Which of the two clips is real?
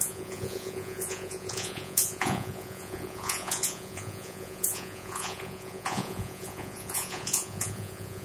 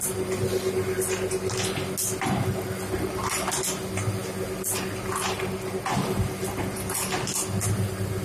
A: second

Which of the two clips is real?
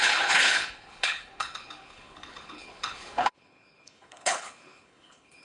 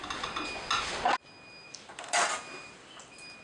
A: second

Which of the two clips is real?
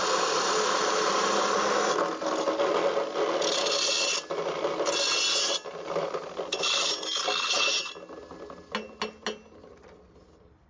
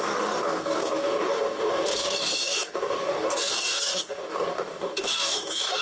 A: first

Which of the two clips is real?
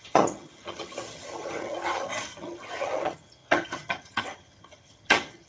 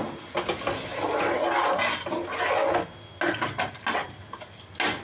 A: second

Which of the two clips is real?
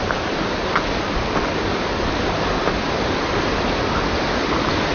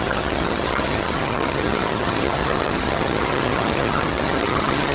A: first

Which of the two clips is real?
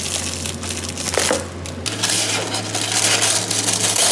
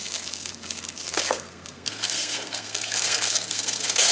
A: first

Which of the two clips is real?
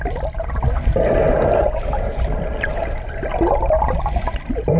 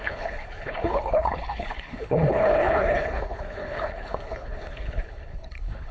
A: first